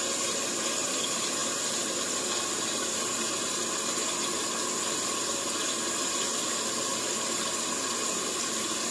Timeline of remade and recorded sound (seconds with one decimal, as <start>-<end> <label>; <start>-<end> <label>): 0.0-8.9 recorded